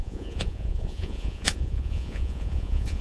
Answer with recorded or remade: remade